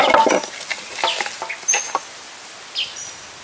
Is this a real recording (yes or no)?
yes